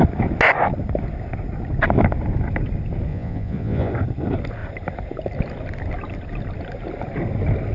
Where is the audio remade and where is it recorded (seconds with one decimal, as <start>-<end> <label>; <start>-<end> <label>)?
0.0-3.1 recorded; 3.1-3.9 remade; 3.9-7.7 recorded